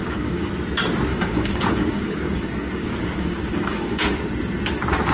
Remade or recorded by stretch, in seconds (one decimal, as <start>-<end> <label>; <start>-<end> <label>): 0.0-0.5 remade; 0.5-1.1 recorded; 1.1-4.2 remade; 4.2-5.1 recorded